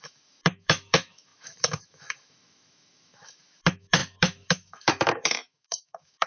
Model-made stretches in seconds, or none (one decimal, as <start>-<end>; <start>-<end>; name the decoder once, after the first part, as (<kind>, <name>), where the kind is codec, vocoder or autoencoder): 0.0-6.3 (autoencoder, DAC-VAE)